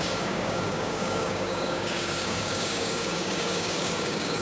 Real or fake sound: fake